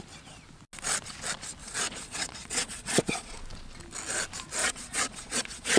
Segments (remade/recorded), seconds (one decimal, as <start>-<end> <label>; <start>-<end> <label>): 0.0-1.6 recorded; 1.6-3.4 remade; 3.4-4.6 recorded; 4.6-5.8 remade